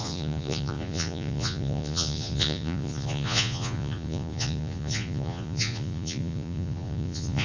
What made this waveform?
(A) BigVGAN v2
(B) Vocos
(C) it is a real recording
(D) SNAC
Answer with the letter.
B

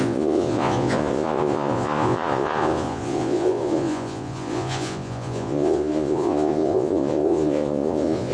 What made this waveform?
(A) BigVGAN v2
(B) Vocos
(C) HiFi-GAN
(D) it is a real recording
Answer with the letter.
B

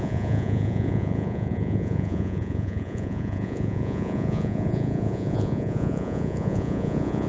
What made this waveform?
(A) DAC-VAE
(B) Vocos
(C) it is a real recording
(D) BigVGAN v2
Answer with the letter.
B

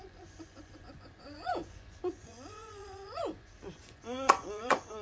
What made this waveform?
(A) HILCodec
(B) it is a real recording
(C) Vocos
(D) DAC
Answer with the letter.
C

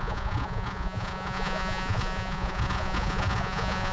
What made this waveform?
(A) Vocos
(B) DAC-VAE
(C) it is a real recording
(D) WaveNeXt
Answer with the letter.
A